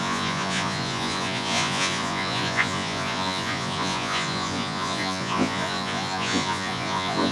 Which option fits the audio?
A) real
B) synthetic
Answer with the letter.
B